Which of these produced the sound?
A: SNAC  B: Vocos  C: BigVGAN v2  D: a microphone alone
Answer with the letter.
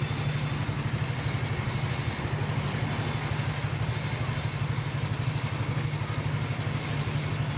D